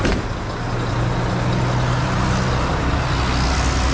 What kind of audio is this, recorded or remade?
recorded